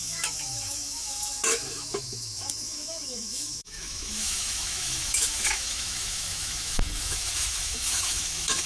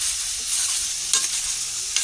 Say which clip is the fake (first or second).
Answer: first